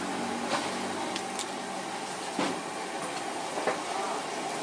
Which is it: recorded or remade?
recorded